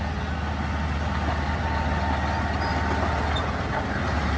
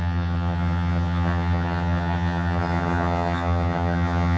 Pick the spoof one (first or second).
second